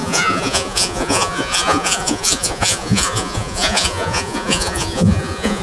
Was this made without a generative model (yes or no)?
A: no